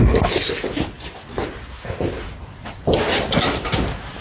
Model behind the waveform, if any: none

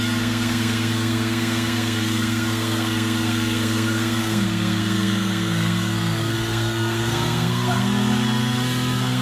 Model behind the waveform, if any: codec, SNAC